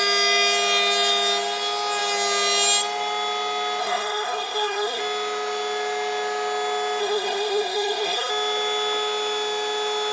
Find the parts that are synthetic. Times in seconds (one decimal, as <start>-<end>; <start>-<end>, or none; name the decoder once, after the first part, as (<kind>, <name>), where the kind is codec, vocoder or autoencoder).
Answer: 3.8-5.0 (codec, SNAC); 7.0-8.3